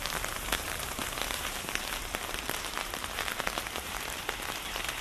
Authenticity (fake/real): fake